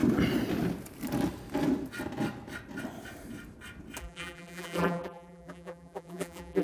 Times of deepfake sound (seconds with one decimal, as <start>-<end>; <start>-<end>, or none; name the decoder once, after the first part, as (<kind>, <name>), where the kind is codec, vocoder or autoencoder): 4.0-6.6 (vocoder, BigVGAN v2)